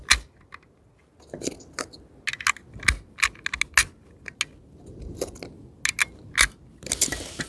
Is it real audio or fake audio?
real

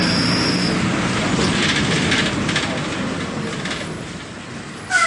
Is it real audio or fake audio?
real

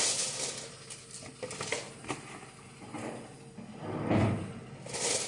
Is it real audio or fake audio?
real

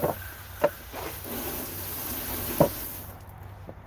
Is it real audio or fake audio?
real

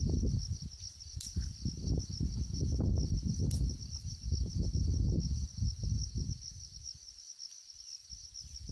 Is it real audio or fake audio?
real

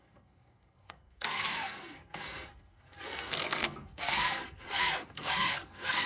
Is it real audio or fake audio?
fake